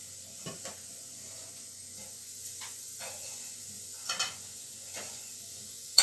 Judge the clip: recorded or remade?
remade